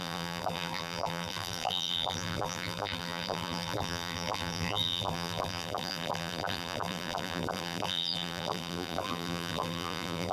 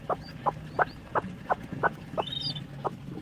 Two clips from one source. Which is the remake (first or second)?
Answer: first